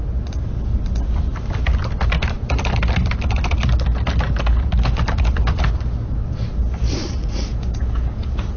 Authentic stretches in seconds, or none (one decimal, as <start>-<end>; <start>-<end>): 0.0-7.5